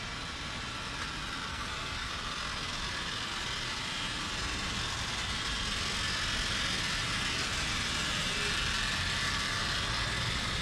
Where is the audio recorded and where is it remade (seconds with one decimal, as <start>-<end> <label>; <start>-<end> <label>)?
0.0-1.5 recorded; 1.5-2.1 remade; 2.1-10.6 recorded